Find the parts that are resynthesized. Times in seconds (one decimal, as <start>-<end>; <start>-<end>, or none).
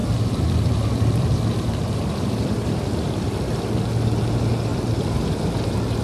0.0-3.6; 4.7-5.5